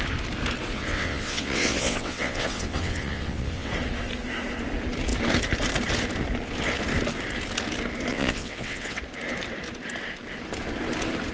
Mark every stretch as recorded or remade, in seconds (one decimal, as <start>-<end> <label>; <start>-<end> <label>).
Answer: 0.0-0.7 recorded; 0.7-3.7 remade; 3.7-8.1 recorded; 8.1-9.0 remade; 9.0-11.3 recorded